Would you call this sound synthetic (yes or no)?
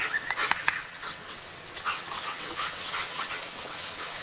yes